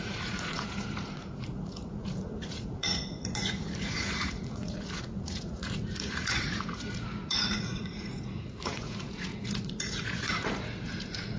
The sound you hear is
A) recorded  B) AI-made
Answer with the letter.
B